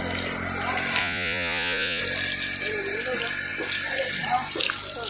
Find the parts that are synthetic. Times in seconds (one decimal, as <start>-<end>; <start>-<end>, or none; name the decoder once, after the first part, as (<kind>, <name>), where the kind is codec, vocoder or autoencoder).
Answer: 1.0-2.0 (vocoder, Vocos)